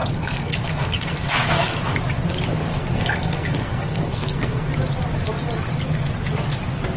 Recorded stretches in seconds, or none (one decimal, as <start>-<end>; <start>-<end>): 1.8-2.7; 4.7-7.0